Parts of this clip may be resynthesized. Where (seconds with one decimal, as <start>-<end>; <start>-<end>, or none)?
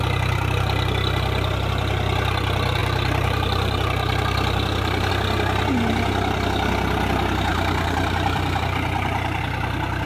2.8-5.1; 7.5-9.4